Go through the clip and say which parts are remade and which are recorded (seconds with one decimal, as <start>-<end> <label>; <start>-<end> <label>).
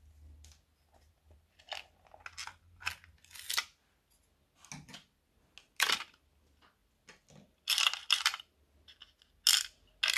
0.0-10.2 recorded